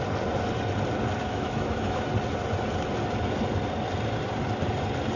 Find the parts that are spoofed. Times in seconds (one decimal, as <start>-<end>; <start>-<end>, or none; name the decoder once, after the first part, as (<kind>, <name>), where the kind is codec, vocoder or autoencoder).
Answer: 1.2-2.1 (autoencoder, DAC-VAE)